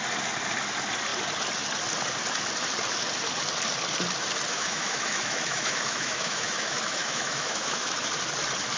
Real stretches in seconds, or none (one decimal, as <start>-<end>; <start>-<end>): 0.0-4.5; 8.1-8.8